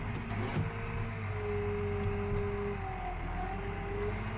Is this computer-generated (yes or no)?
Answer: no